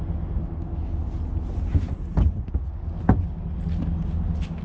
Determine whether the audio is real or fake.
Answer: real